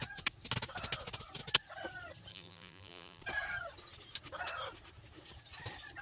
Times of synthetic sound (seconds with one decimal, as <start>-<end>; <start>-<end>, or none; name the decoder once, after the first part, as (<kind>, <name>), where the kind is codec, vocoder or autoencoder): 2.3-3.2 (vocoder, BigVGAN v2)